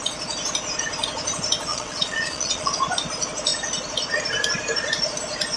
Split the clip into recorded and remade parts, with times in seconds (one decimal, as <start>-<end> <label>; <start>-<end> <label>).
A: 0.0-1.7 recorded; 1.7-2.7 remade; 2.7-5.6 recorded